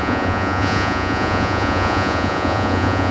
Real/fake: fake